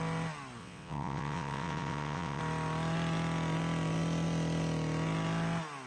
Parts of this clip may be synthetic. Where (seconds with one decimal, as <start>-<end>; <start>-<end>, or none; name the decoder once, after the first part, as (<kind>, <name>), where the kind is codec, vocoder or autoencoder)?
0.6-2.4 (vocoder, WaveNeXt)